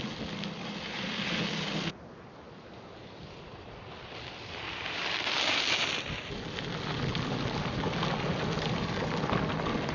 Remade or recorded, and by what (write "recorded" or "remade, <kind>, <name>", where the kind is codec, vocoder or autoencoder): recorded